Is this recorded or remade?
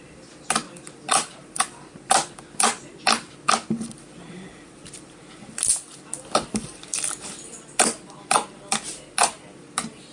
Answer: recorded